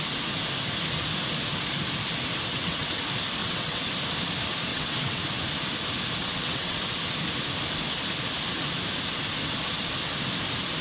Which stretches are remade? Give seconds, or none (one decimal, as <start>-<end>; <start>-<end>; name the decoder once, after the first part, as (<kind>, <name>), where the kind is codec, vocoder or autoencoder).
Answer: 2.5-3.0 (vocoder, WaveNeXt); 3.4-3.9; 4.7-5.2; 6.2-6.8